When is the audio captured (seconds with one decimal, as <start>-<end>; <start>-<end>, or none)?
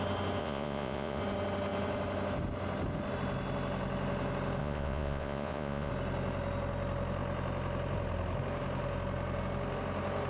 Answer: 0.0-0.4; 1.2-4.6; 5.9-10.3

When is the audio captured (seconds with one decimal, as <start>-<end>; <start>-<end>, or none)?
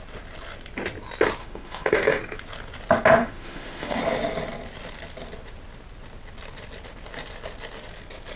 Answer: 0.0-1.4; 2.2-3.2; 4.0-8.4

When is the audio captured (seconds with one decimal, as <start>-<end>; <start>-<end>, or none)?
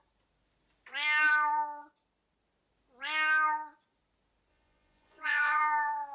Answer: 0.0-4.5; 5.6-6.1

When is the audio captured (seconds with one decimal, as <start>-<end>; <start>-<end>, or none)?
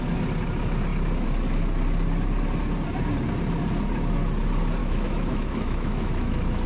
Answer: 0.0-4.8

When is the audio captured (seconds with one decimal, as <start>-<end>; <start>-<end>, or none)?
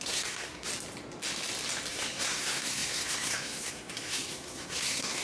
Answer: 0.7-1.9